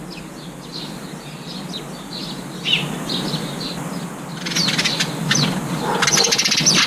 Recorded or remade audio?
recorded